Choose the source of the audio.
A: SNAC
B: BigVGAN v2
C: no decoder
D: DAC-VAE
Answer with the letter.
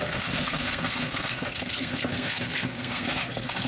A